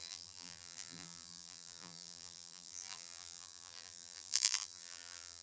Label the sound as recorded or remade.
remade